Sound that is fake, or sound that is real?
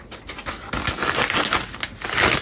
real